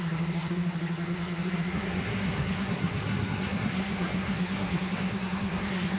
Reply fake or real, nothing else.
fake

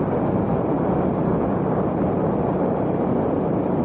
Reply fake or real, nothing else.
fake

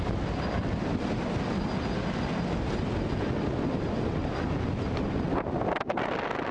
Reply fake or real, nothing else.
real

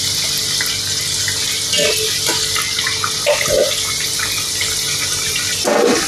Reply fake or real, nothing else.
real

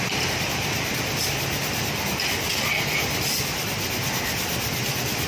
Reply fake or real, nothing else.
real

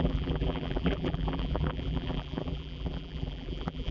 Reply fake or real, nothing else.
fake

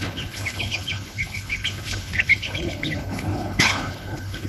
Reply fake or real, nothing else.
fake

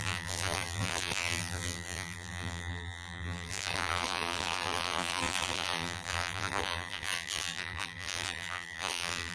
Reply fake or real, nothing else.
fake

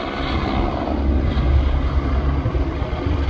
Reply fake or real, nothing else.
real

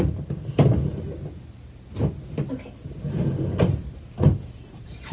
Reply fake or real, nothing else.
real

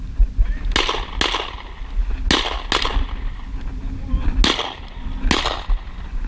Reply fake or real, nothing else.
real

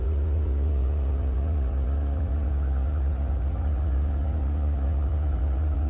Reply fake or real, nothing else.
fake